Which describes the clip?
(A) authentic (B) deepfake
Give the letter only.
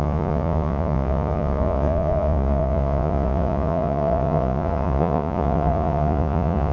B